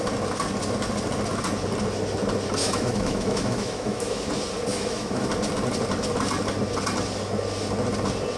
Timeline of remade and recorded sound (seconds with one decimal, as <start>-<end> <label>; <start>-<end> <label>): 0.0-2.6 recorded; 2.6-4.3 remade; 4.3-4.7 recorded; 4.7-5.3 remade; 5.3-8.4 recorded